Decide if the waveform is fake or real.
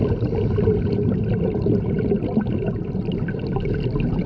real